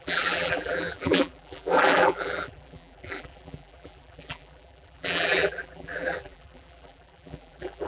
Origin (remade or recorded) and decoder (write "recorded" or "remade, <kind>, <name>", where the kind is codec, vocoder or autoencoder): remade, vocoder, BigVGAN v2